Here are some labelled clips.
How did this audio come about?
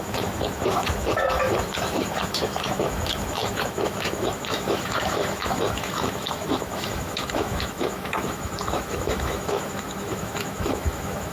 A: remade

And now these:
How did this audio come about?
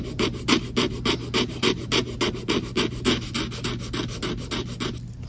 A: recorded